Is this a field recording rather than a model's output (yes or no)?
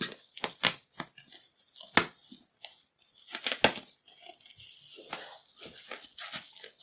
yes